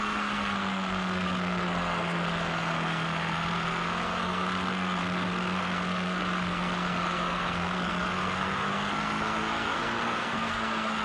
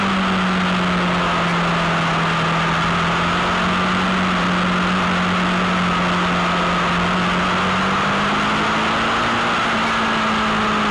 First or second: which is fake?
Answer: first